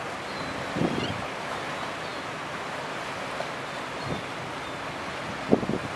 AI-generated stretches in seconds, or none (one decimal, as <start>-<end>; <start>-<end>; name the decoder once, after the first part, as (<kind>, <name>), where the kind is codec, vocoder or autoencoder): none

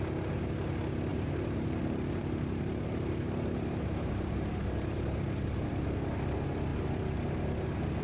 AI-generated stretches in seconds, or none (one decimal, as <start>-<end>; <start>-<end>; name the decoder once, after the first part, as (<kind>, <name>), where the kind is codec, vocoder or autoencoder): 1.1-5.7 (vocoder, BigVGAN v2)

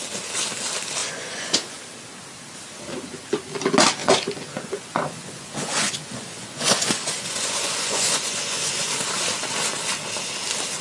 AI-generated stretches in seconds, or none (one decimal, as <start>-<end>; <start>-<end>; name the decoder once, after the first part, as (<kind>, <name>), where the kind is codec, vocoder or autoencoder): 1.0-1.8 (vocoder, Vocos); 4.0-8.9